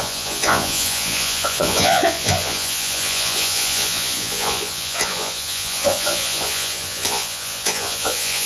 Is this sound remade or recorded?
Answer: remade